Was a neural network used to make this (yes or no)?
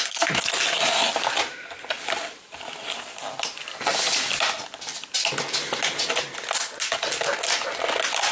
no